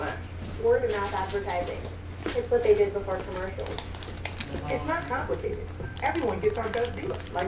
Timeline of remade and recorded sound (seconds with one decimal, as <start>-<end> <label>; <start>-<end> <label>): 0.0-7.5 recorded